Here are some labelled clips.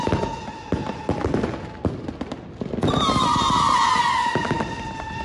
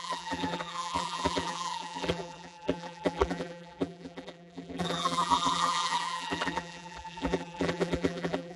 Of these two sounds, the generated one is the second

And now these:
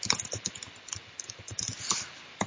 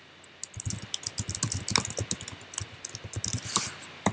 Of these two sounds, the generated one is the first